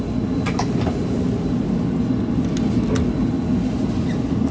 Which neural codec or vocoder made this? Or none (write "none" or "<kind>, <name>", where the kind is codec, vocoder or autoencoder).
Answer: none